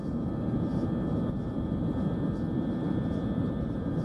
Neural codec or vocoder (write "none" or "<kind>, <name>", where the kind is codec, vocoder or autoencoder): vocoder, BigVGAN v2